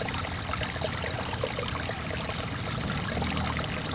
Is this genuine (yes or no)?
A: yes